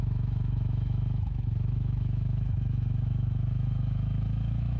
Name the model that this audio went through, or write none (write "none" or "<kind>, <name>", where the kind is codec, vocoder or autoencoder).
autoencoder, DAC-VAE